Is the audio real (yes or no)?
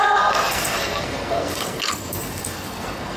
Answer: no